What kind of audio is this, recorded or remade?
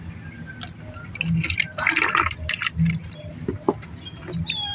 recorded